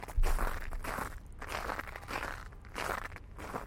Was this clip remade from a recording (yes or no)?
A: no